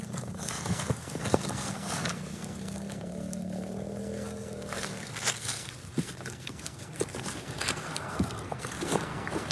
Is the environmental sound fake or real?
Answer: fake